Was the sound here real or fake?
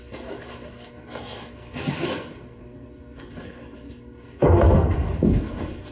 fake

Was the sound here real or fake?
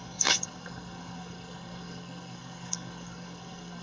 fake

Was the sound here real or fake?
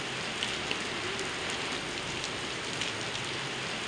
real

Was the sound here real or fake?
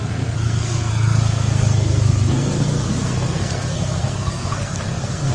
fake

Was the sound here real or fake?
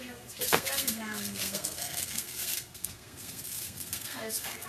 fake